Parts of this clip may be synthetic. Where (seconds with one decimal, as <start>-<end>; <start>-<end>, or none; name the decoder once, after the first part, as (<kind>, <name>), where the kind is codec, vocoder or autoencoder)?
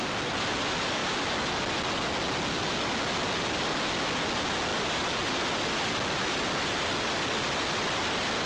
none